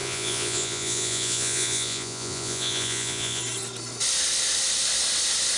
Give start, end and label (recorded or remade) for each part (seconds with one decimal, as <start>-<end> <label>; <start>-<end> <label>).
0.0-3.4 remade; 3.4-5.6 recorded